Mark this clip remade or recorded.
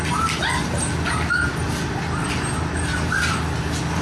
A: recorded